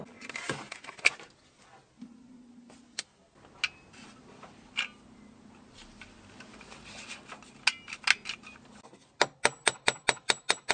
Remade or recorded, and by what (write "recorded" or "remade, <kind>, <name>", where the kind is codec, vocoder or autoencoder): recorded